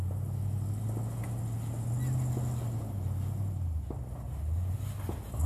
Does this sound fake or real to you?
real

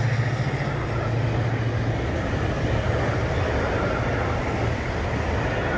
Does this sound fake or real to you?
real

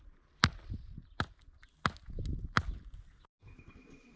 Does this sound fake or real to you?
real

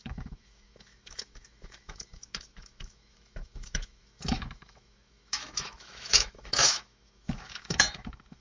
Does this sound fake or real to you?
fake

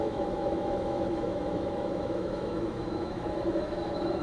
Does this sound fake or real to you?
fake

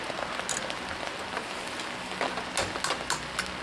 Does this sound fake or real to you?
real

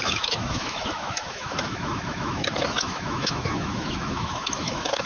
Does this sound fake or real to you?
fake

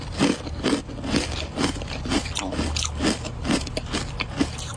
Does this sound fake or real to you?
real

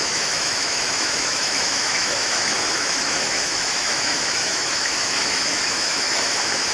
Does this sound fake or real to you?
fake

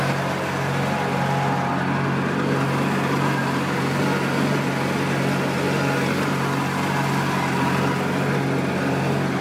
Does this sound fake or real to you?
real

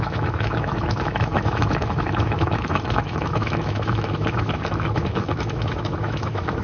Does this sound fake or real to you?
fake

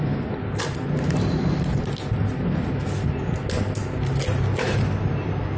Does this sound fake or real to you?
real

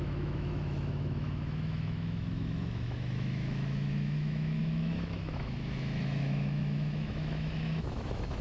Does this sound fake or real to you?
fake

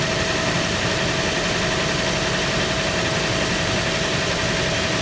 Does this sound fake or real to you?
real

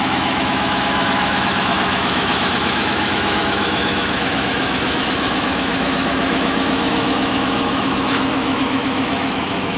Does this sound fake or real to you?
fake